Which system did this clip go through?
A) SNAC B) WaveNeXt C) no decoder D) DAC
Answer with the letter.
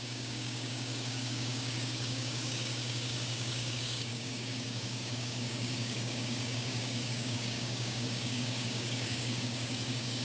D